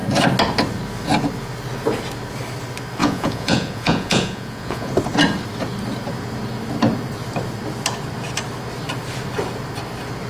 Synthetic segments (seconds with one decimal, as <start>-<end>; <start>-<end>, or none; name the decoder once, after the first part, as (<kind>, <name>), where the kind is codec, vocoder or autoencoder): 3.0-4.9 (vocoder, Vocos)